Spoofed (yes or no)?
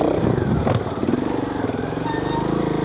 no